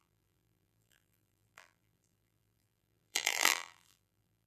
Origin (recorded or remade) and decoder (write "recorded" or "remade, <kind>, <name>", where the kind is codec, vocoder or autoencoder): remade, vocoder, BigVGAN v2